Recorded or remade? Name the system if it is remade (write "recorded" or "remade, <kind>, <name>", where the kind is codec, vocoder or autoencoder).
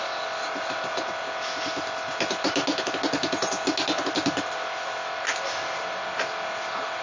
recorded